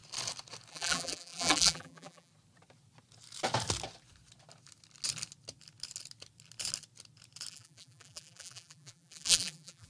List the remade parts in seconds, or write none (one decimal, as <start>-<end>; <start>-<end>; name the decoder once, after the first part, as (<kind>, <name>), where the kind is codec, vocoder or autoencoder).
0.7-2.3 (vocoder, BigVGAN v2); 7.5-9.9